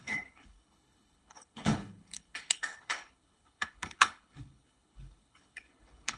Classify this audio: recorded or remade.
remade